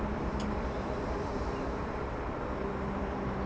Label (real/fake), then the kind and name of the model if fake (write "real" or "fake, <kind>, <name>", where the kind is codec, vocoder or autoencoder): fake, vocoder, BigVGAN v2